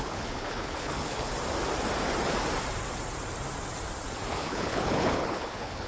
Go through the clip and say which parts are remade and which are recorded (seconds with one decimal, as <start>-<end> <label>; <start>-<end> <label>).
0.0-1.3 remade; 1.3-4.3 recorded; 4.3-5.9 remade